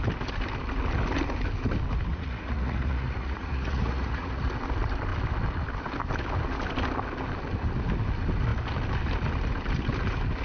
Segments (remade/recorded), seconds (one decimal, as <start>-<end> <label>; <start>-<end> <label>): 0.0-2.1 recorded; 2.1-4.4 remade; 4.4-10.4 recorded